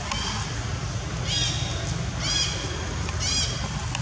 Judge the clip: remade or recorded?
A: recorded